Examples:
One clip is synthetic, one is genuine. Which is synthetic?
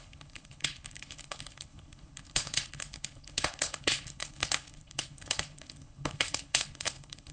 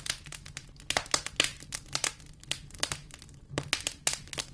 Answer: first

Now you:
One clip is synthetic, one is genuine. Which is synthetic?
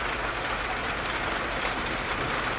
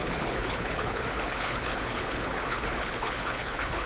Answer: second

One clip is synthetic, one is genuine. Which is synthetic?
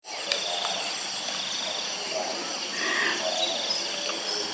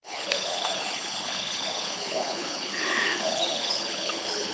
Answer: second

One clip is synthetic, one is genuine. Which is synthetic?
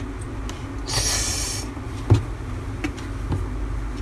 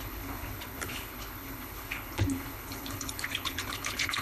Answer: second